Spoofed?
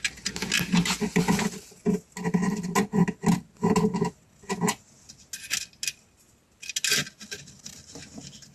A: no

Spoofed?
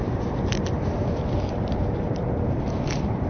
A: yes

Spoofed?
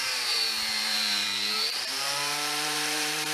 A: yes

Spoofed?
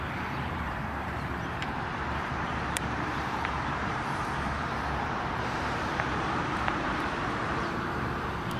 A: yes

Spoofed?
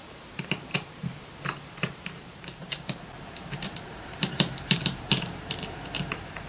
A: yes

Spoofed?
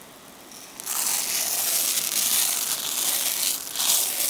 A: no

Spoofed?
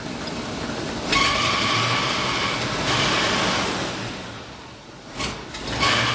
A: no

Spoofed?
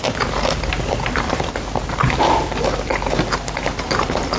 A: yes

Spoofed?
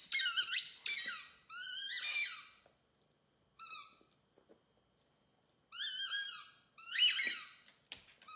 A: no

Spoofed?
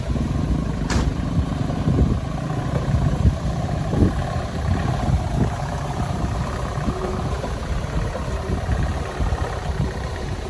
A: yes